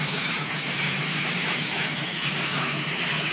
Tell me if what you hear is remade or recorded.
remade